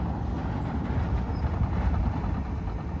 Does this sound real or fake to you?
real